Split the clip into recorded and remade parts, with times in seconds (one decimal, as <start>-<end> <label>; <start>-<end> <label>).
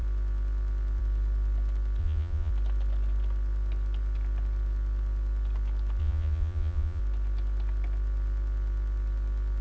0.0-2.0 recorded; 2.0-2.5 remade; 2.5-6.0 recorded; 6.0-7.0 remade; 7.0-9.6 recorded